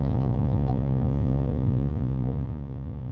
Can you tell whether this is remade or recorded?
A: remade